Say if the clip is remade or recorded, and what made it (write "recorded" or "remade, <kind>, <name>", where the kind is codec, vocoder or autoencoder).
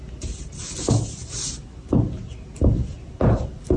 recorded